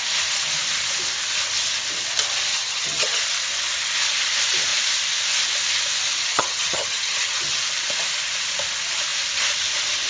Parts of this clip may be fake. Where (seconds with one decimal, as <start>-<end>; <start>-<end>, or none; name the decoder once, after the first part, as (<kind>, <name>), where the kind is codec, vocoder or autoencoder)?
2.5-3.2 (vocoder, HiFi-GAN); 6.2-7.6